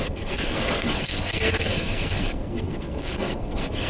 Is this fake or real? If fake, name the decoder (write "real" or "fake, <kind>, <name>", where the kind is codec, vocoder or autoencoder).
fake, codec, SNAC